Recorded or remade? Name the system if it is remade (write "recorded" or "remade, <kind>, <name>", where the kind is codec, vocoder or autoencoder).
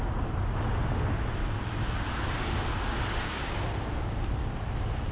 recorded